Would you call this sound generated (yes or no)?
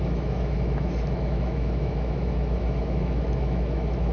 yes